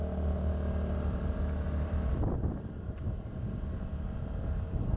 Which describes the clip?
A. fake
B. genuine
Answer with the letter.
A